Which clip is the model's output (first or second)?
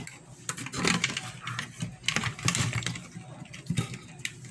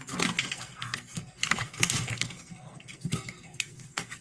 second